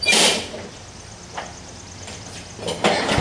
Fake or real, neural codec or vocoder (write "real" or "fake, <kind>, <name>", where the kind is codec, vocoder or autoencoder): real